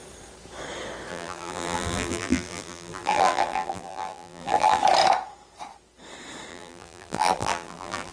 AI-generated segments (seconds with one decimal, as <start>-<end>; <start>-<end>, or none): 1.1-4.8; 6.5-8.1